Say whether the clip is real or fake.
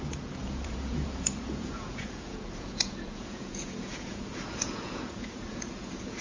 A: fake